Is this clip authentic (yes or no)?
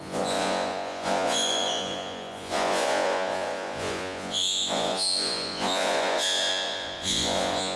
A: no